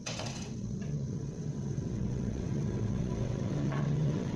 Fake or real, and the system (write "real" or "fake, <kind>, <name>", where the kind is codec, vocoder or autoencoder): fake, vocoder, WaveNeXt